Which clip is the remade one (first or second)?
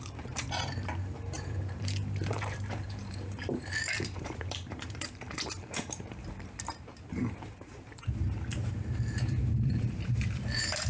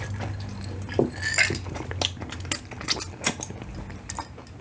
first